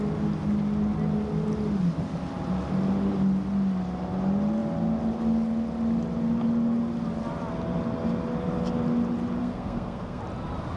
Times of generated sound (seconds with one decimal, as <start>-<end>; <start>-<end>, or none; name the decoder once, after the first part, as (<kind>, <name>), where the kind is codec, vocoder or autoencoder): 9.4-10.2 (codec, SNAC)